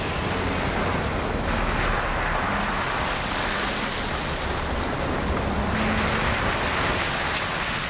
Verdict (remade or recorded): recorded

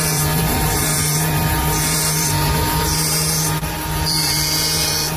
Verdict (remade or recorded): remade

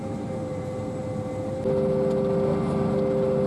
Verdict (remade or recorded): recorded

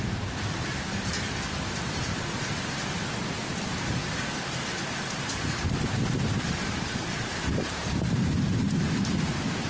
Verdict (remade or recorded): remade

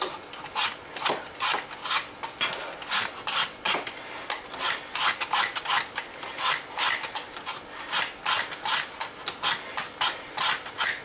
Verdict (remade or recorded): recorded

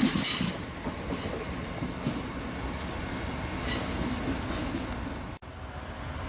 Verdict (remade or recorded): recorded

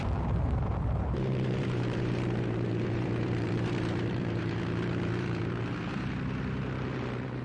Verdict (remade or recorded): remade